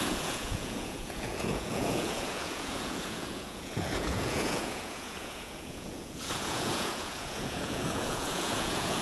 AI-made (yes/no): yes